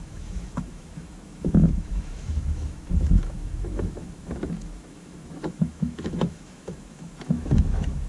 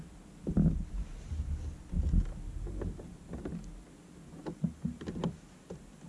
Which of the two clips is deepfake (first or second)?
first